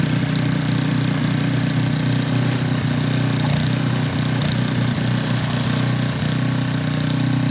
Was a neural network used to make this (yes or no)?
no